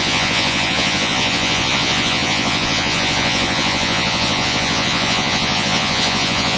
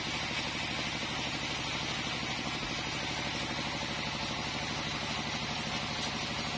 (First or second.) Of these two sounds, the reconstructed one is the first